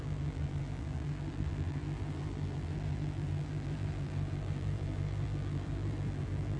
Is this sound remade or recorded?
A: remade